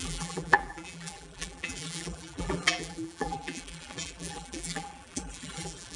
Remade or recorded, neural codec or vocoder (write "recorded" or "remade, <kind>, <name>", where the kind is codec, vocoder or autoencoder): remade, vocoder, BigVGAN v2